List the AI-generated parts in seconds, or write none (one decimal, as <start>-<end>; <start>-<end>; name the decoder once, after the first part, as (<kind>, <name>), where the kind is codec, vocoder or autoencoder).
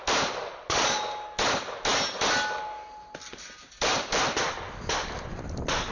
0.4-1.0 (vocoder, Vocos)